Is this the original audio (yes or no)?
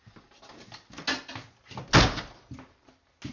yes